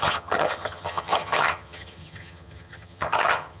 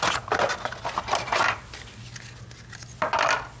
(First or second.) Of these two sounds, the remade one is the first